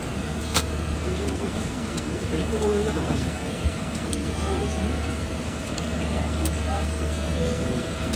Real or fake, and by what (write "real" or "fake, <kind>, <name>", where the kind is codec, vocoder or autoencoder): fake, codec, SNAC